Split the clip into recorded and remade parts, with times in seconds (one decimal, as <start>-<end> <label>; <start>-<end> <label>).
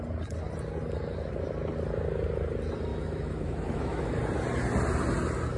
0.0-2.9 recorded; 2.9-4.2 remade; 4.2-5.6 recorded